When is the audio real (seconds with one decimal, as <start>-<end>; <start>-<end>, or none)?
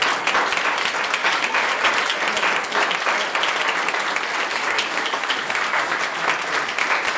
0.0-1.2; 1.9-4.5; 6.0-7.2